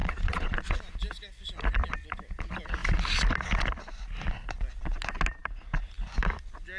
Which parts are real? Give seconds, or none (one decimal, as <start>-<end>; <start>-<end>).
0.8-6.8